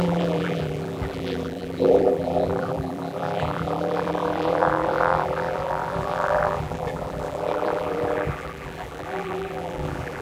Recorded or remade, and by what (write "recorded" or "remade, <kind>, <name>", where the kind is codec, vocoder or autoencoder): remade, vocoder, BigVGAN v2